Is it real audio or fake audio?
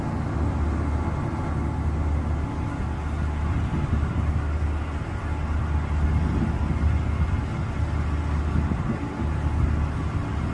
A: real